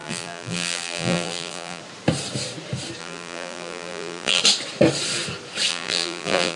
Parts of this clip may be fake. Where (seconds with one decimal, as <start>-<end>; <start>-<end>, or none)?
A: 0.0-1.8; 3.0-4.4; 5.7-6.6